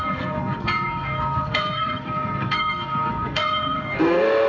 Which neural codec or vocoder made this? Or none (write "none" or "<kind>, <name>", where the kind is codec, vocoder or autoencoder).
codec, SNAC